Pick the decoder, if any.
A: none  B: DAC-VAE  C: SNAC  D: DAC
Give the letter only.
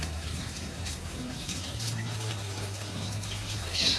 C